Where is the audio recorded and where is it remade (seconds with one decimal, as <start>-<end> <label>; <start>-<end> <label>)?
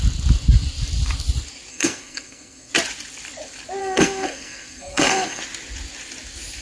0.0-1.7 recorded; 1.7-2.7 remade; 2.7-3.8 recorded; 3.8-5.4 remade; 5.4-6.6 recorded